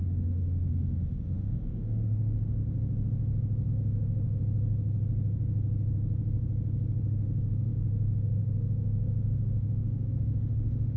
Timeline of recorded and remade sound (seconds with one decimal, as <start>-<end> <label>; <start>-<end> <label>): 0.0-2.6 remade; 2.6-3.7 recorded; 3.7-4.4 remade; 4.4-7.0 recorded; 7.0-11.0 remade